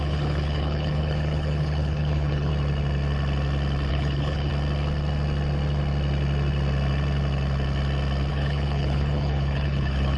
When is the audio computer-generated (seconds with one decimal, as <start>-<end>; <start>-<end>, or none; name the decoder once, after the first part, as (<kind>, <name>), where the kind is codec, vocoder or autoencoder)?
0.0-2.5 (codec, HILCodec); 3.9-4.5; 8.3-10.2